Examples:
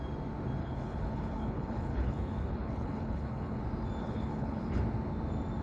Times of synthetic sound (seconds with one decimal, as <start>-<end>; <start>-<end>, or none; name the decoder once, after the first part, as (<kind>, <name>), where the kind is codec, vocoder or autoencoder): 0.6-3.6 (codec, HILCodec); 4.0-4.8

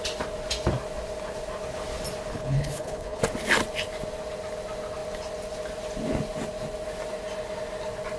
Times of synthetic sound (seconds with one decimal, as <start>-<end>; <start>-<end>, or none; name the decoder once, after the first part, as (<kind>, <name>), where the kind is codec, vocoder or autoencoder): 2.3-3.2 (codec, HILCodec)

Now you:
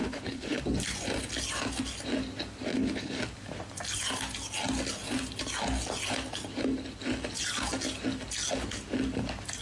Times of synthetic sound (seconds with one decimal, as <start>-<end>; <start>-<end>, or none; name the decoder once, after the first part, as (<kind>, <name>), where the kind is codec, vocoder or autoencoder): 0.0-0.6 (codec, HILCodec); 2.7-3.2

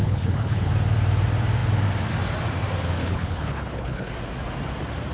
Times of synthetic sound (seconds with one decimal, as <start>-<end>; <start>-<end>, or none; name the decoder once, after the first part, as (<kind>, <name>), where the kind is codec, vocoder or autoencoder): 0.0-0.7 (codec, HILCodec); 3.0-4.1